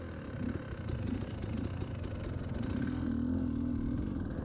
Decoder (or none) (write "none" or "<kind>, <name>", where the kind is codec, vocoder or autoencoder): none